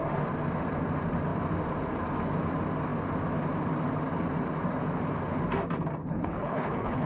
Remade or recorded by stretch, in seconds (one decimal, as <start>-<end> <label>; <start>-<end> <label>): 0.0-6.0 recorded; 6.0-7.1 remade